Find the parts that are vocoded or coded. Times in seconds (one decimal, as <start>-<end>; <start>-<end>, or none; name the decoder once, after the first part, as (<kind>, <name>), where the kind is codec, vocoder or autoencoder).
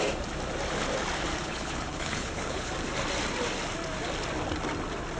1.4-2.7 (codec, HILCodec)